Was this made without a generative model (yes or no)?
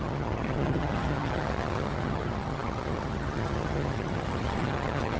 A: no